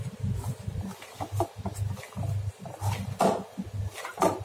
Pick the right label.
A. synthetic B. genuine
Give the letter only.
B